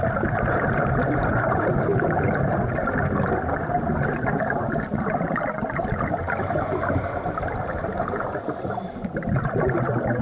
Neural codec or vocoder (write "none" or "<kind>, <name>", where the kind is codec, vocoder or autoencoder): none